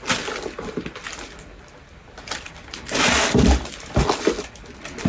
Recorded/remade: remade